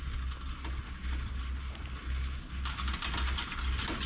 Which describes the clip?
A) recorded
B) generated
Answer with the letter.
A